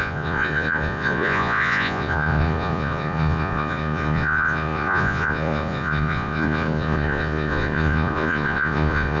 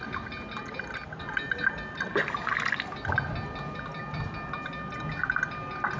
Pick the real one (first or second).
second